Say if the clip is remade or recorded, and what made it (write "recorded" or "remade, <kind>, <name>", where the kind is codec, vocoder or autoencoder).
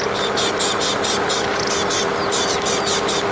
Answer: recorded